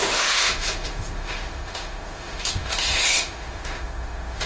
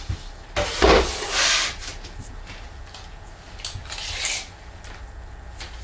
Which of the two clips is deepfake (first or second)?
first